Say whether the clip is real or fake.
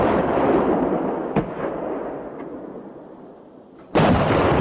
fake